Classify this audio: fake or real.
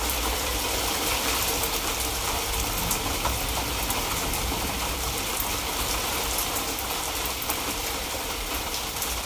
fake